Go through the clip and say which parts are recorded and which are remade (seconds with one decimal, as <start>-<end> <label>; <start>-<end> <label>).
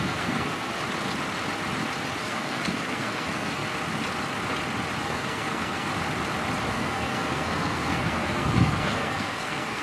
0.0-0.7 remade; 0.7-2.2 recorded; 2.2-3.6 remade; 3.6-5.0 recorded; 5.0-5.9 remade; 5.9-6.7 recorded; 6.7-9.8 remade